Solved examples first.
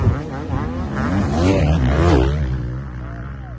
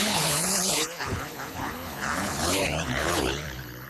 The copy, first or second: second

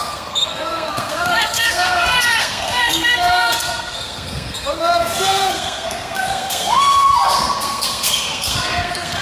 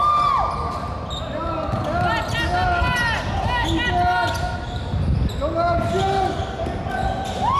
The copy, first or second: first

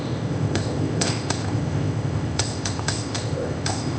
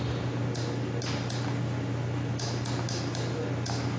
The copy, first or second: first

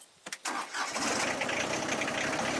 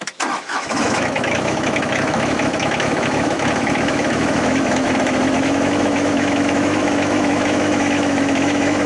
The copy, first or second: second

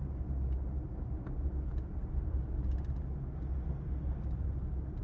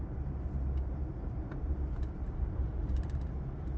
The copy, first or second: second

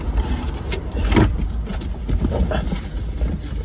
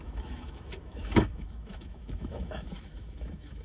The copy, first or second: second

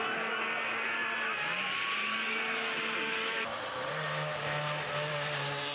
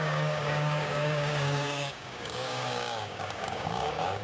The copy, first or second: second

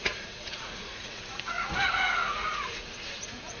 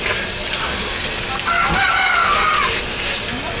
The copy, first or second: first